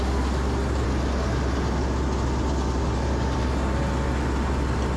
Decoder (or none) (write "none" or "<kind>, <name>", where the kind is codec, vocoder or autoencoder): none